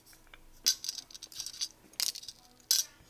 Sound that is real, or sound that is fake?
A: real